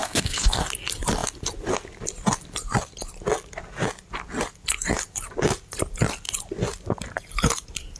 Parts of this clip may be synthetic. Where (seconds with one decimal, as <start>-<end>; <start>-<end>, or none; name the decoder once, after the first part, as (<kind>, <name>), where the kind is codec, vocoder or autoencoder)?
0.0-0.6 (codec, SNAC)